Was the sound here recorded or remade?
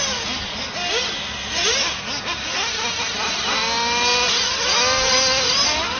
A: recorded